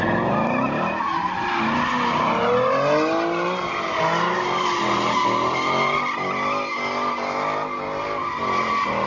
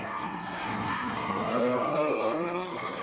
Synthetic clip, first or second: second